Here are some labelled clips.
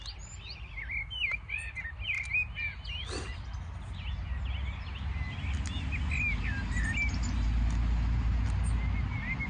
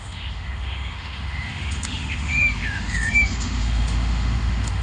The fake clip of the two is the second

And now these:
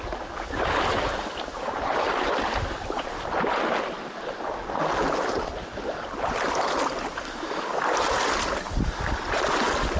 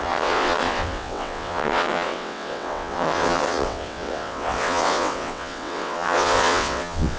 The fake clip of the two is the second